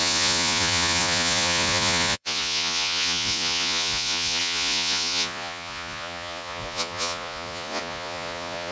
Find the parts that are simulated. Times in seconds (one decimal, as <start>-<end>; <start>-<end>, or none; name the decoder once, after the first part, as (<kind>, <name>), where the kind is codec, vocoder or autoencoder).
0.0-8.7 (vocoder, Vocos)